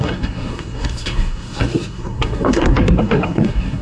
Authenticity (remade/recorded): remade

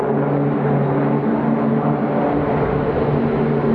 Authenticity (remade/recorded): recorded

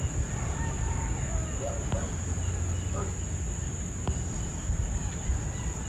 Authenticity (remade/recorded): recorded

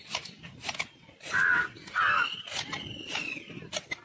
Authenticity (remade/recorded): recorded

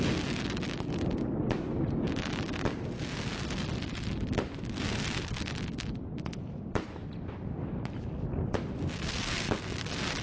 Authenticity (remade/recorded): recorded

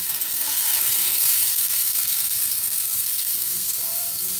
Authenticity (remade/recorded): remade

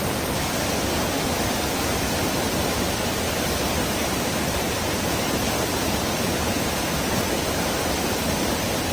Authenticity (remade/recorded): recorded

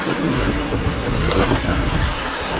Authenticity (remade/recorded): remade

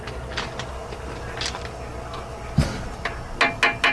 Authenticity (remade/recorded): recorded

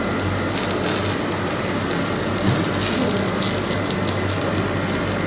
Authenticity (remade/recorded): recorded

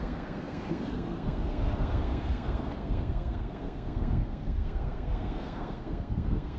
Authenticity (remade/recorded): remade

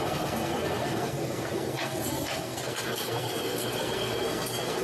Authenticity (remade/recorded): remade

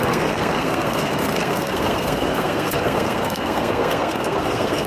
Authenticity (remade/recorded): remade